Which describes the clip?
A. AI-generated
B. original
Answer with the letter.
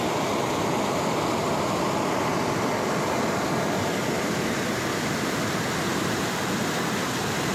B